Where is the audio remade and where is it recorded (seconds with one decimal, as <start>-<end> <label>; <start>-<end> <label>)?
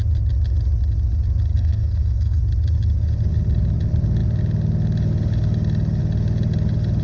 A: 0.0-1.5 recorded; 1.5-2.4 remade; 2.4-7.0 recorded